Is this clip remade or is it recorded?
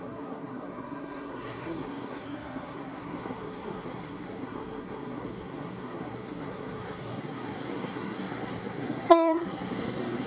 remade